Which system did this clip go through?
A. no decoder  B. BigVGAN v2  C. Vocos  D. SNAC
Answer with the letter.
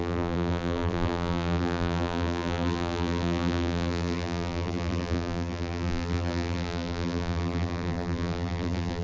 B